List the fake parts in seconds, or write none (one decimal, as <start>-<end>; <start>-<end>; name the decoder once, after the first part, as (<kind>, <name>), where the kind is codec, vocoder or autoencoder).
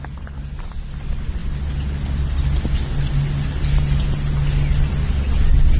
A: none